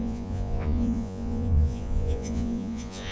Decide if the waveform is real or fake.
fake